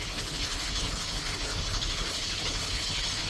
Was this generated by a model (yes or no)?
yes